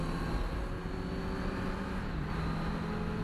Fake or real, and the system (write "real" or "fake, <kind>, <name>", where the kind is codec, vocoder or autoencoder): real